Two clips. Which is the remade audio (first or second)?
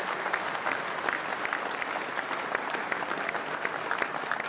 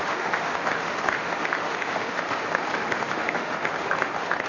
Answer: second